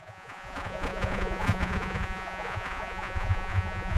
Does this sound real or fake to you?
fake